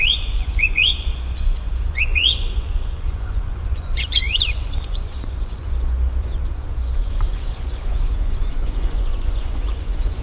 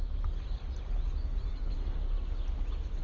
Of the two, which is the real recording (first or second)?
second